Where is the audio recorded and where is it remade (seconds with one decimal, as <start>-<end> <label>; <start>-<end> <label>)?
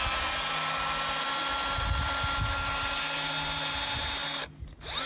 0.0-5.0 recorded